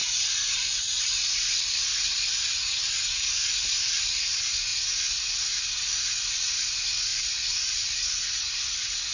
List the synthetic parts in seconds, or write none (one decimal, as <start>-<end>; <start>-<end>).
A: 0.0-2.9; 7.1-7.7